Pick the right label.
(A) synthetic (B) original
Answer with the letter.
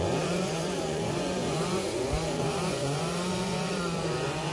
A